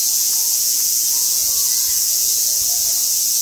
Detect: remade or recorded remade